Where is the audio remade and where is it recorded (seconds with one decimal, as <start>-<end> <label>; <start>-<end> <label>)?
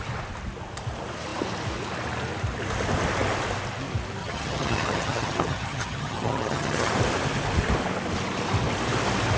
0.0-4.2 recorded; 4.2-6.9 remade; 6.9-9.4 recorded